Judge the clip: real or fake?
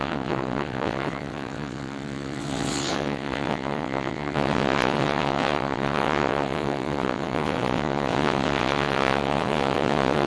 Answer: fake